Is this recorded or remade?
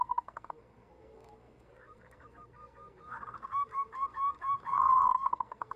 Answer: remade